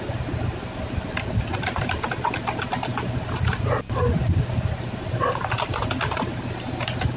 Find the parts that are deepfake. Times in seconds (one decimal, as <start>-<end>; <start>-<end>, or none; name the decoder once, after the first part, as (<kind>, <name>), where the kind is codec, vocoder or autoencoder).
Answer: none